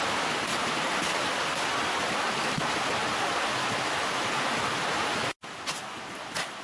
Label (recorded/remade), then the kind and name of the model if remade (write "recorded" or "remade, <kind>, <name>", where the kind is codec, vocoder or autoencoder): recorded